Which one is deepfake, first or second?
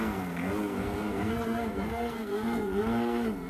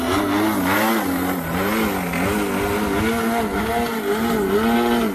first